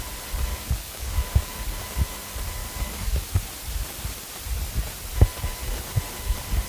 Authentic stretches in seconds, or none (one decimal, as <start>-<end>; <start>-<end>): 0.0-0.5; 1.8-2.6; 3.3-6.7